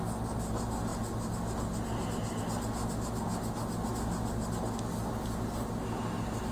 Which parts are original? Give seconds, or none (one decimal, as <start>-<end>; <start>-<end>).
0.0-6.5